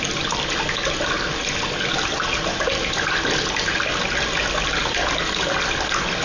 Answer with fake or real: real